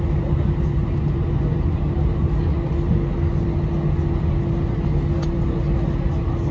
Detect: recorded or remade recorded